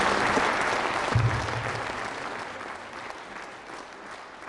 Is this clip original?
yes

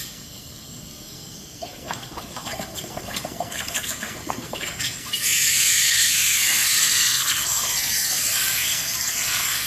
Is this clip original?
no